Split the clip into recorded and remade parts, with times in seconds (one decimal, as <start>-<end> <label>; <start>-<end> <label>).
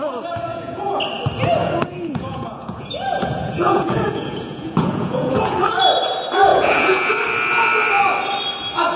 0.0-0.5 recorded; 0.5-1.0 remade; 1.0-1.6 recorded; 1.6-5.6 remade; 5.6-6.5 recorded; 6.5-7.1 remade; 7.1-9.0 recorded